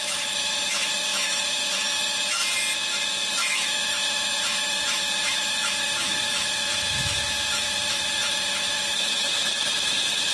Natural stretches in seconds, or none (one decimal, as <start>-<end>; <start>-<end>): 2.4-3.3